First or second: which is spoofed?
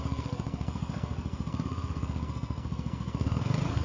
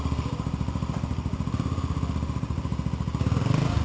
first